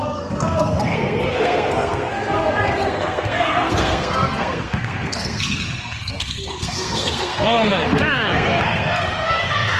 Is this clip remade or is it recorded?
remade